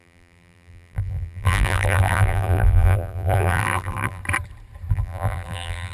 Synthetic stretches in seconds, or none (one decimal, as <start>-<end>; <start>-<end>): 0.0-4.2; 4.9-5.9